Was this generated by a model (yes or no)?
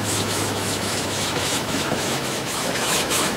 yes